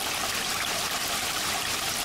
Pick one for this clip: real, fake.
real